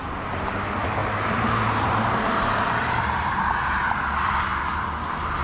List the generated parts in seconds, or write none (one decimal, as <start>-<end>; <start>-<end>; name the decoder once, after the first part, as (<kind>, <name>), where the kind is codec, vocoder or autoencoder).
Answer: 1.0-3.4 (vocoder, BigVGAN v2)